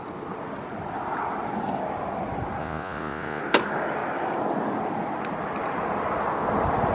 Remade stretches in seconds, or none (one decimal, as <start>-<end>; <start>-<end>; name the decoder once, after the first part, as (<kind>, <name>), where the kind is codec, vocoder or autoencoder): 2.6-3.4 (vocoder, Vocos)